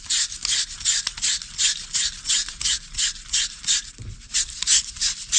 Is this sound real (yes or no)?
yes